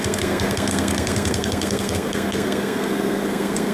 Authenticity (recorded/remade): remade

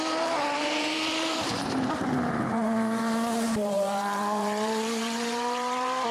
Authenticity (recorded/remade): remade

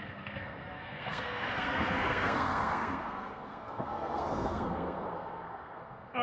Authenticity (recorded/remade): remade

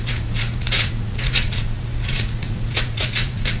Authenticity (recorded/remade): remade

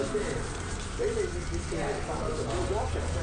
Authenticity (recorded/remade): recorded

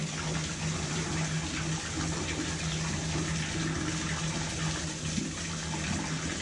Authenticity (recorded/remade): recorded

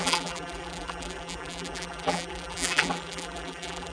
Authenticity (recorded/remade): remade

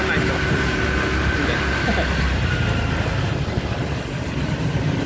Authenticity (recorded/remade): recorded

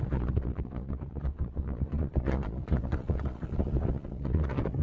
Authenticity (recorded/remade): remade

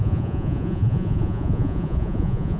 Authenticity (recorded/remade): remade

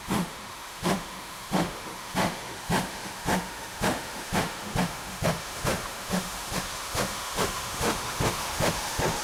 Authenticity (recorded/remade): remade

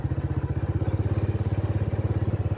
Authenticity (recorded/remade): recorded